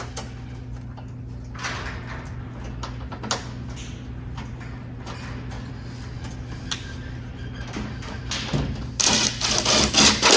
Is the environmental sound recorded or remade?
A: recorded